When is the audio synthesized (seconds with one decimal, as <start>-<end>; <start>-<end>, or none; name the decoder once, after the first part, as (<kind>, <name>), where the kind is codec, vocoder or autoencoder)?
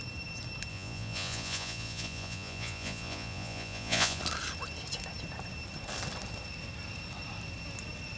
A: 0.7-4.2 (vocoder, Vocos)